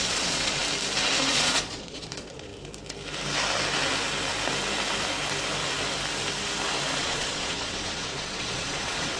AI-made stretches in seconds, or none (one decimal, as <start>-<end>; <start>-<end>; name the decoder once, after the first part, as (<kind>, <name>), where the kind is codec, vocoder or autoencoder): 0.0-0.6 (vocoder, Vocos); 1.3-2.5; 7.0-9.2

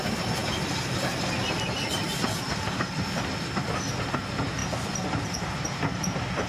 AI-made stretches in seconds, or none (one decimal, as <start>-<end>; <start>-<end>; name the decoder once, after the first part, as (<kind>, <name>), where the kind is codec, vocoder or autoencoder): none